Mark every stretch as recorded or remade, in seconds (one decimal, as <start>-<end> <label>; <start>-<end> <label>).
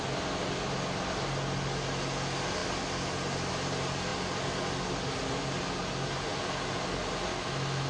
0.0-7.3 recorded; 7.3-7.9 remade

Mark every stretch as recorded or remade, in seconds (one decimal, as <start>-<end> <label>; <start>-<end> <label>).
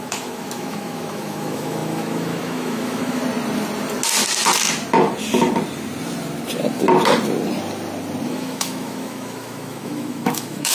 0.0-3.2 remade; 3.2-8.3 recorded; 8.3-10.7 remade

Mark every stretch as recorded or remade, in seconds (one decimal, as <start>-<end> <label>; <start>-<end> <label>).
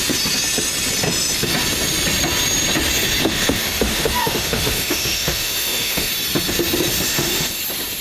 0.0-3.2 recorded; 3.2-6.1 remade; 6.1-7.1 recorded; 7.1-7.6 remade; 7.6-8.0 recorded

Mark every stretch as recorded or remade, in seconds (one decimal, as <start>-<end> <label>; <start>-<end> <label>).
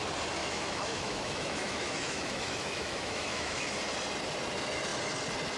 0.0-0.4 recorded; 0.4-3.8 remade; 3.8-5.6 recorded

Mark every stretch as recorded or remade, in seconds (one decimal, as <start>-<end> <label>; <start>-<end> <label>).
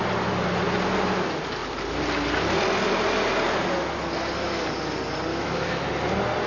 0.0-5.3 recorded; 5.3-5.9 remade; 5.9-6.5 recorded